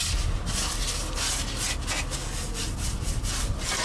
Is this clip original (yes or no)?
yes